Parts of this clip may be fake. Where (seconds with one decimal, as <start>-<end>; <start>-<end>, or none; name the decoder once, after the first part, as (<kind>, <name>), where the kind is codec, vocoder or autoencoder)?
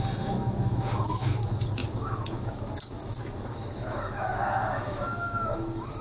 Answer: 0.0-6.0 (autoencoder, DAC-VAE)